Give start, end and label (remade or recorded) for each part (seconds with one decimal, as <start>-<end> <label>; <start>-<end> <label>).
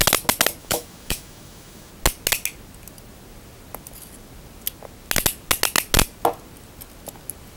0.0-0.6 recorded; 0.6-1.9 remade; 1.9-7.6 recorded